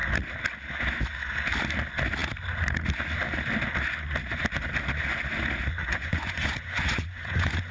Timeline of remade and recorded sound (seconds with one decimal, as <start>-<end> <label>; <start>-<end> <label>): 0.0-5.8 recorded; 5.8-7.7 remade

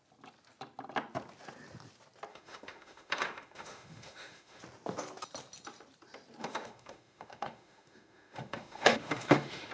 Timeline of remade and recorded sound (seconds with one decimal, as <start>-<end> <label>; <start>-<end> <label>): 0.0-2.3 recorded; 2.3-4.6 remade; 4.6-6.4 recorded; 6.4-9.7 remade

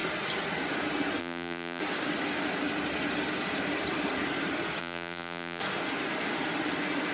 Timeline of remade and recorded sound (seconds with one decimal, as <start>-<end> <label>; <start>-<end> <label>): 0.0-1.2 recorded; 1.2-1.8 remade; 1.8-4.8 recorded; 4.8-5.6 remade; 5.6-7.1 recorded

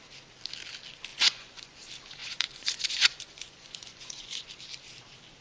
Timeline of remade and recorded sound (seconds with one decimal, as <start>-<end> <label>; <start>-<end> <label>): 0.0-1.1 recorded; 1.1-1.8 remade; 1.8-2.2 recorded; 2.2-4.5 remade; 4.5-5.4 recorded

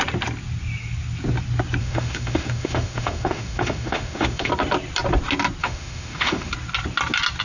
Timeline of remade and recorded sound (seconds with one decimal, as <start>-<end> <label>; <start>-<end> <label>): 0.0-1.8 recorded; 1.8-4.5 remade; 4.5-5.6 recorded; 5.6-6.5 remade; 6.5-7.4 recorded

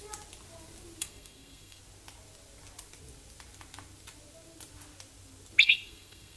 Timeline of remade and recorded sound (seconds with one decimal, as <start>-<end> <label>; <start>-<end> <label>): 0.0-1.0 recorded; 1.0-1.8 remade; 1.8-5.6 recorded; 5.6-6.4 remade

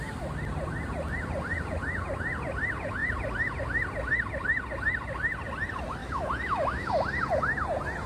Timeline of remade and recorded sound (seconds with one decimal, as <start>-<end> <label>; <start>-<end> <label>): 0.0-6.0 recorded; 6.0-6.9 remade; 6.9-8.1 recorded

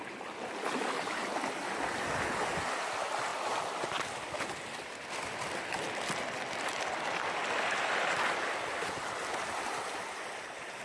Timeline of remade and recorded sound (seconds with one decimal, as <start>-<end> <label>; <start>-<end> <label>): 0.0-10.8 recorded